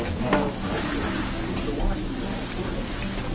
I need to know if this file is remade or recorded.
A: recorded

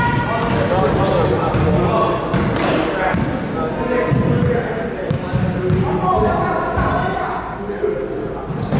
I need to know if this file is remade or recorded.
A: recorded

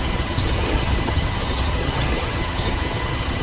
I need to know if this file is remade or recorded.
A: remade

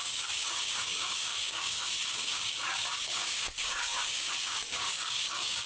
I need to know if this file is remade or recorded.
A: remade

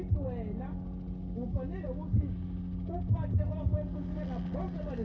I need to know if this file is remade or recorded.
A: recorded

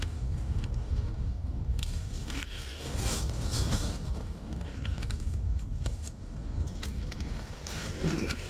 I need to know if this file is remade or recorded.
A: remade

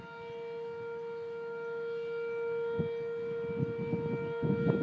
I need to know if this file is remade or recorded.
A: recorded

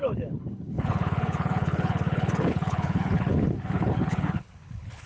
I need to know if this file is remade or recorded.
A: remade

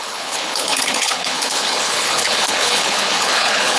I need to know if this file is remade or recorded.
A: remade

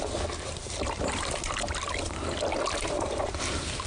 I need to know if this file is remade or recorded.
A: recorded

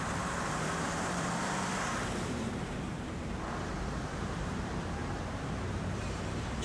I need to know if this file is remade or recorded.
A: remade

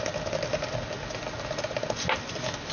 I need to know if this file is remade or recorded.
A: recorded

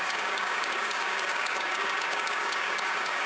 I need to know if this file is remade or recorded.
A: remade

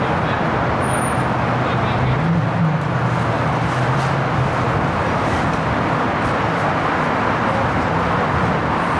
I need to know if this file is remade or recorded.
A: recorded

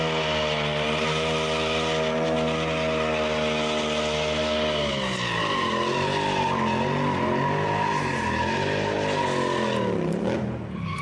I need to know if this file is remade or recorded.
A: recorded